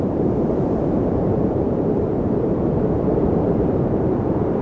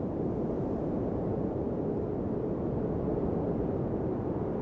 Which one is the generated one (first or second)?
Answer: first